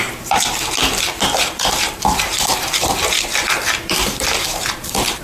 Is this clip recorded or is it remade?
remade